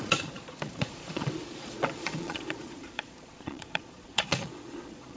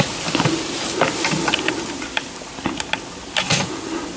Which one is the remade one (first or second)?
first